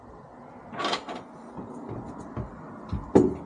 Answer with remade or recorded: recorded